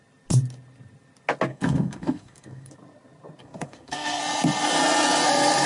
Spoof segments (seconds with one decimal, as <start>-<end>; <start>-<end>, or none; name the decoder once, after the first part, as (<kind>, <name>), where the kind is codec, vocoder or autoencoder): 1.5-2.7 (codec, SNAC); 3.4-4.2